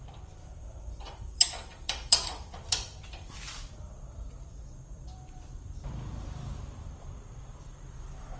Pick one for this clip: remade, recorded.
remade